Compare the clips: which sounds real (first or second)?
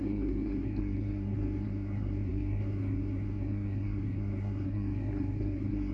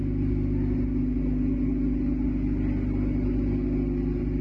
second